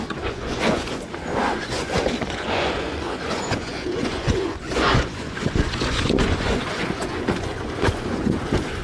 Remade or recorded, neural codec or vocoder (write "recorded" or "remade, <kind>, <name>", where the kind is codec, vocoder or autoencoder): remade, vocoder, Vocos